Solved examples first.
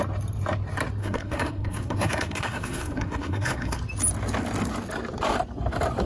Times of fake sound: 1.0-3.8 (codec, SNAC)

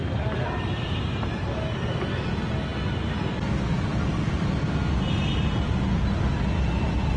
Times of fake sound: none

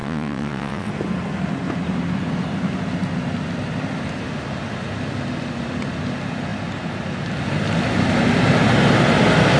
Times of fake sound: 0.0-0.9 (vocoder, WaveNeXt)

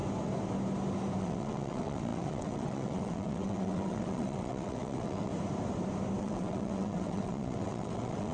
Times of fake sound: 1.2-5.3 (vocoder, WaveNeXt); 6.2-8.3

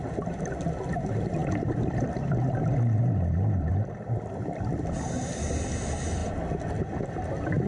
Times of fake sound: none

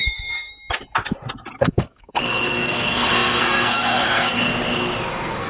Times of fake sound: 0.0-0.5 (codec, SNAC); 1.6-4.5; 5.1-5.5